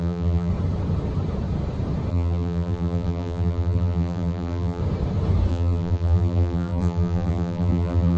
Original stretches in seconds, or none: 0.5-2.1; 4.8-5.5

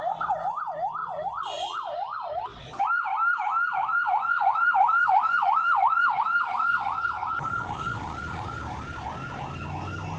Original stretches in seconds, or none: 0.0-1.0; 2.9-3.7; 8.5-10.2

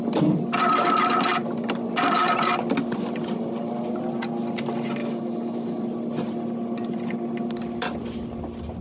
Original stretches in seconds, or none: 0.0-5.0; 5.8-8.8

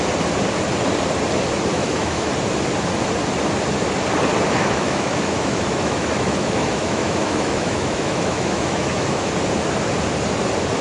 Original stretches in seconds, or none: 0.0-1.7; 2.3-4.6; 9.3-10.8

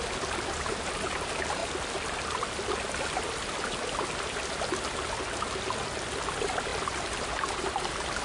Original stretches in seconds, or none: 0.0-8.2

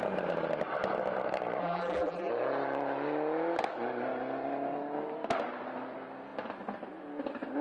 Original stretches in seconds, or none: 0.0-1.6; 2.3-7.6